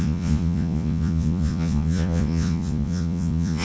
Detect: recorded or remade remade